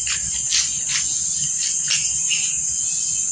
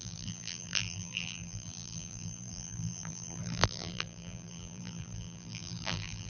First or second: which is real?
first